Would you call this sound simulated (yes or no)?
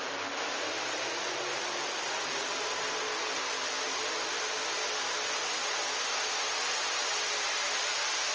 no